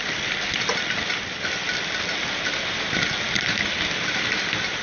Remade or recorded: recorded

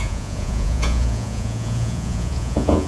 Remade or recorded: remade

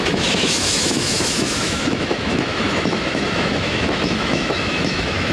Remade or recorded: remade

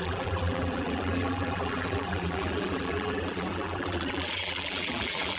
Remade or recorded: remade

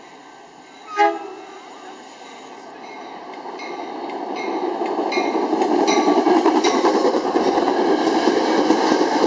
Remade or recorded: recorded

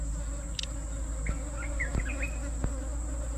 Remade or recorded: recorded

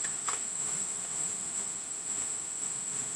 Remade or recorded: remade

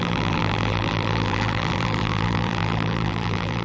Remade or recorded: remade